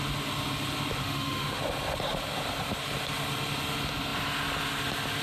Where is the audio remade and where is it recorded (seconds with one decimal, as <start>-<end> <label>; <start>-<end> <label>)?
0.0-1.0 recorded; 1.0-1.6 remade; 1.6-5.2 recorded